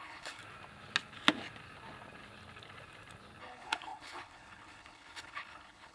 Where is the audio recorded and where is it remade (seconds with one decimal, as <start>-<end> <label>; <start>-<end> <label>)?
0.0-0.4 remade; 0.4-3.4 recorded; 3.4-5.9 remade